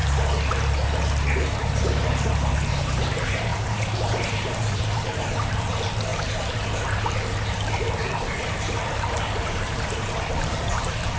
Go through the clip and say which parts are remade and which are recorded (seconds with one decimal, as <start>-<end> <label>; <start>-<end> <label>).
0.0-2.8 recorded; 2.8-6.1 remade; 6.1-8.5 recorded; 8.5-11.2 remade

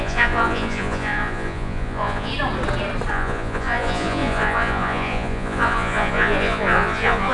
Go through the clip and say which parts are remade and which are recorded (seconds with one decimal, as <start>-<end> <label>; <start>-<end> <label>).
0.0-2.3 remade; 2.3-3.1 recorded; 3.1-7.3 remade

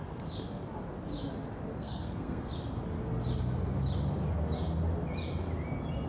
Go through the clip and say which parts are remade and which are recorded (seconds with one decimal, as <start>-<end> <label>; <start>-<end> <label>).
0.0-1.7 recorded; 1.7-2.5 remade; 2.5-6.1 recorded

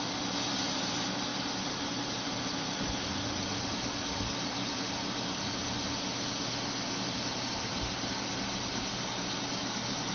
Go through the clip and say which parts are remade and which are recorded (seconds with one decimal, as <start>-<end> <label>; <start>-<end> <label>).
0.0-10.1 recorded